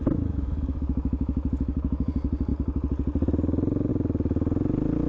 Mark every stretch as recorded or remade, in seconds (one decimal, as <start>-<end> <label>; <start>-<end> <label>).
0.0-2.1 remade; 2.1-5.1 recorded